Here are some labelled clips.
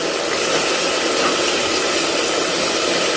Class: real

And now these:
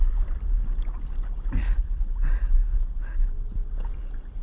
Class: real